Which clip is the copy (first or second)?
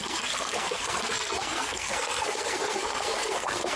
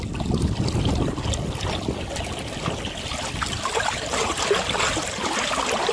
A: first